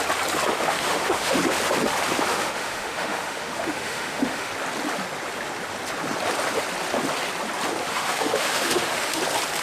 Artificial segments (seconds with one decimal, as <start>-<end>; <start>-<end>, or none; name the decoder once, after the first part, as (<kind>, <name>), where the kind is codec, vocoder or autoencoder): 0.5-1.4 (autoencoder, DAC-VAE); 2.3-4.5; 7.9-9.2